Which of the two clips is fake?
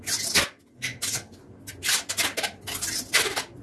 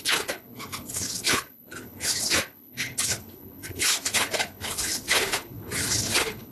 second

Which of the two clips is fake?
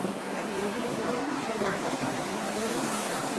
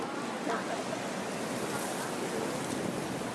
first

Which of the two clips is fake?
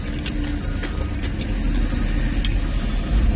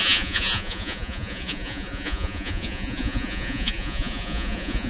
second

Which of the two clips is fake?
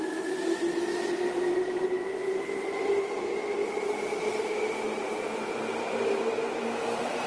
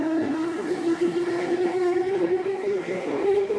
second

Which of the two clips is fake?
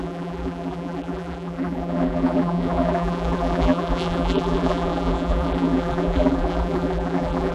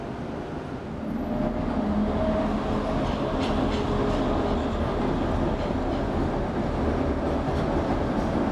first